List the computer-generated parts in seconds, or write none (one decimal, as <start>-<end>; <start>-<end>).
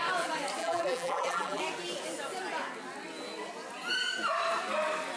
0.6-1.6